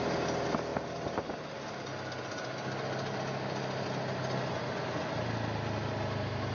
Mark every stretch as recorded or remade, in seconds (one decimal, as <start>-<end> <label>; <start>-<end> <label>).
0.0-6.5 recorded